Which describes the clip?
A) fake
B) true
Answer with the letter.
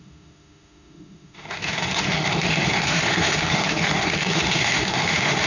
A